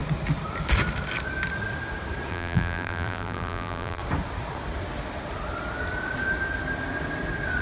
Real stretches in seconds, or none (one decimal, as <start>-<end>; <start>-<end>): 0.0-2.3; 4.0-7.6